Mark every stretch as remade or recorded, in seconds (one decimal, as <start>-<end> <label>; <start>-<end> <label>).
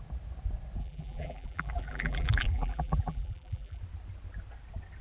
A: 0.0-0.8 recorded; 0.8-3.8 remade; 3.8-5.0 recorded